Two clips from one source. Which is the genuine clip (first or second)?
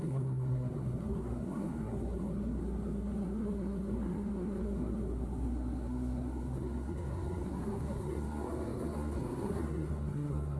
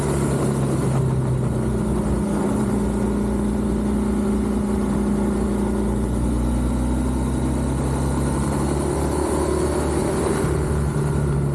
second